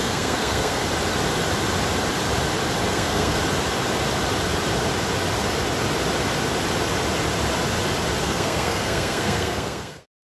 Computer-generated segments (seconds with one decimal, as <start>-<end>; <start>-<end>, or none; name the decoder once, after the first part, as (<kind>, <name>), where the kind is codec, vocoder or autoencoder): 0.0-0.8 (codec, SNAC); 2.9-3.4; 8.2-10.2